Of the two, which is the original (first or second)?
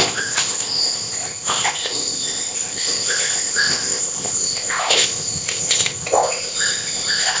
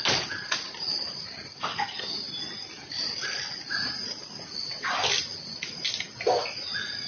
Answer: second